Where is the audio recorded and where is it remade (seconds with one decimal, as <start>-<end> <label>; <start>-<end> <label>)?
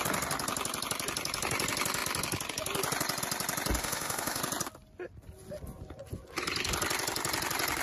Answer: 0.0-3.8 recorded; 3.8-4.4 remade; 4.4-7.8 recorded